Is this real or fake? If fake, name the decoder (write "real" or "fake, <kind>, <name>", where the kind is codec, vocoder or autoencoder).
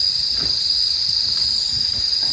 real